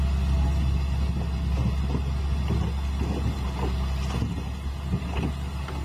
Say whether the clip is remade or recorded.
recorded